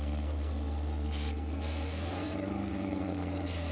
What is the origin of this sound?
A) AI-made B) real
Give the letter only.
A